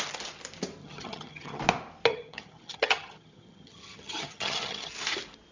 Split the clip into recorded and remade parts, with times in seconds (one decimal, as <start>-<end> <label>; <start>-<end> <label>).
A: 0.0-0.8 recorded; 0.8-1.6 remade; 1.6-2.1 recorded; 2.1-4.9 remade; 4.9-5.5 recorded